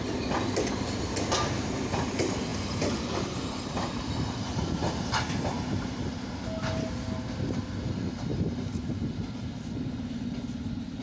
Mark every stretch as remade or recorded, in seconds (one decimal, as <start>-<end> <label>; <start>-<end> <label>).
0.0-2.5 recorded; 2.5-6.0 remade; 6.0-11.0 recorded